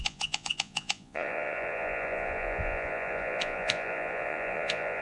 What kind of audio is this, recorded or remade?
remade